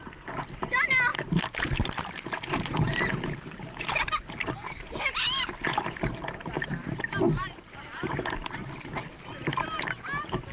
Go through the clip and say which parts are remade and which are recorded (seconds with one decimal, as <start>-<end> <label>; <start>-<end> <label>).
0.0-1.1 recorded; 1.1-3.5 remade; 3.5-8.4 recorded; 8.4-9.5 remade; 9.5-10.5 recorded